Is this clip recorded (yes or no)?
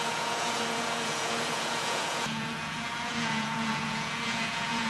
no